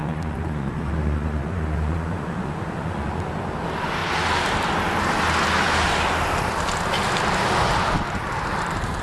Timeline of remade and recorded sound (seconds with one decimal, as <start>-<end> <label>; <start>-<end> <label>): 0.0-3.3 remade; 3.3-9.0 recorded